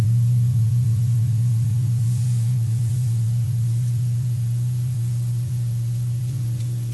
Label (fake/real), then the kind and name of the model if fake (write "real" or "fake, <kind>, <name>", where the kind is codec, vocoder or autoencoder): fake, vocoder, Vocos